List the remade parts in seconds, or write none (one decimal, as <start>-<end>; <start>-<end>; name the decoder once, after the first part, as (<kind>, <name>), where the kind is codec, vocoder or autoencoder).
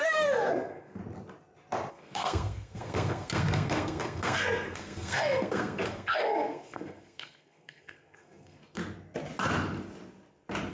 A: 0.0-1.0 (codec, SNAC); 1.9-8.8